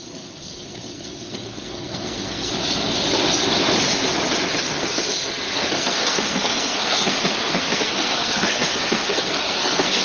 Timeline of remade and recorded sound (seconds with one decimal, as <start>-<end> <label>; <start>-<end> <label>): 0.0-2.5 remade; 2.5-4.6 recorded; 4.6-10.0 remade